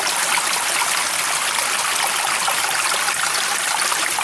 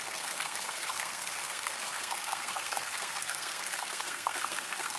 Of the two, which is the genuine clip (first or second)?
first